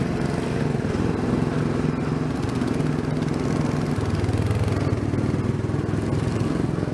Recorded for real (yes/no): yes